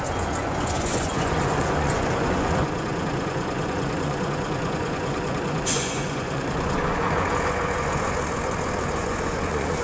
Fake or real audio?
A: fake